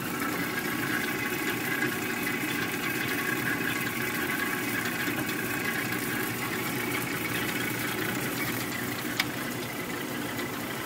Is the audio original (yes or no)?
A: no